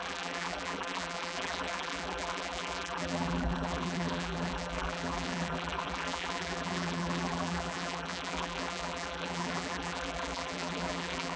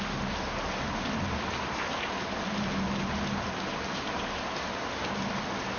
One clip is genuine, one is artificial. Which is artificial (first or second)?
first